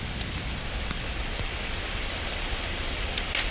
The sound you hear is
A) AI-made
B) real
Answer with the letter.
B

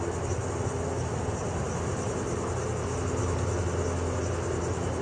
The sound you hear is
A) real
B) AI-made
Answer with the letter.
A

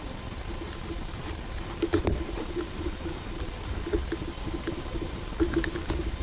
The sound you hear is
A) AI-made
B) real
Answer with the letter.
A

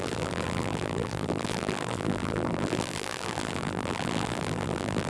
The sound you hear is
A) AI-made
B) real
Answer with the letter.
A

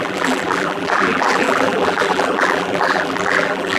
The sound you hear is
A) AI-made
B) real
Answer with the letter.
A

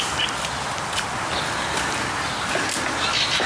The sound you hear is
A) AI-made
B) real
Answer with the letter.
B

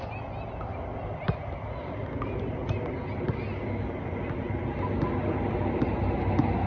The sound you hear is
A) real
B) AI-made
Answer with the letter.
A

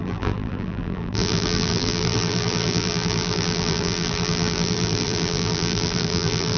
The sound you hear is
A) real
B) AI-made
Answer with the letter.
B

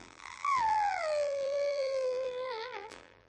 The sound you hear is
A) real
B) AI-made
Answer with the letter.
B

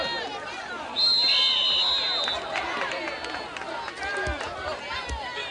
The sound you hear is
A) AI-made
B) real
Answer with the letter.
B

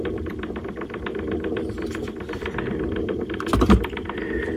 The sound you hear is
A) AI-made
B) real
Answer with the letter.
A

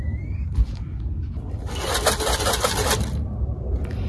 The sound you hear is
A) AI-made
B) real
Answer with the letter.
B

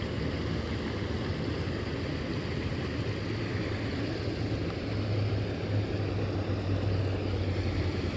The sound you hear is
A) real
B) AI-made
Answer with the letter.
A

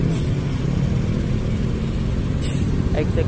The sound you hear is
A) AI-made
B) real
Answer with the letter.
B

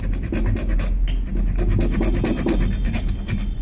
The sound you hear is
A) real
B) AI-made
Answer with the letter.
A